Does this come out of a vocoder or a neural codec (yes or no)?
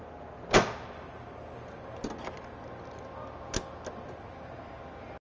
no